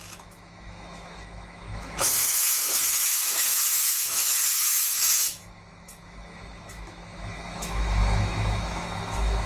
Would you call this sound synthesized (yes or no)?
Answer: yes